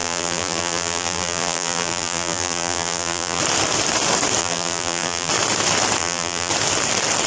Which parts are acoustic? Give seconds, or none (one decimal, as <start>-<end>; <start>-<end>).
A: 3.4-4.4; 5.3-6.0; 6.5-7.3